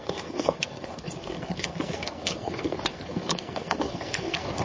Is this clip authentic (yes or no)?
no